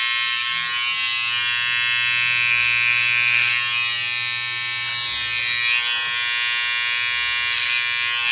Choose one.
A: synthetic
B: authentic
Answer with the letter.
B